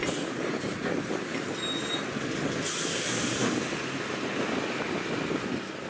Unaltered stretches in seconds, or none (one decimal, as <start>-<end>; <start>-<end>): 0.0-5.9